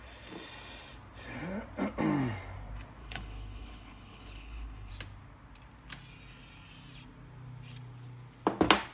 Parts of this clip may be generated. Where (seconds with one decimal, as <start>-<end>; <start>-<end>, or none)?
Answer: 3.0-4.9